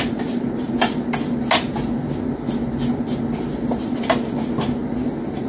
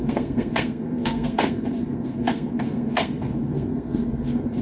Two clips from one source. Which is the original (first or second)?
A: first